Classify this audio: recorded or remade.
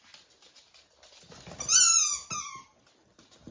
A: recorded